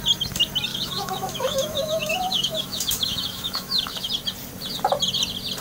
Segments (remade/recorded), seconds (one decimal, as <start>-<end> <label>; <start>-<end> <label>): 0.0-0.7 recorded; 0.7-4.1 remade; 4.1-5.6 recorded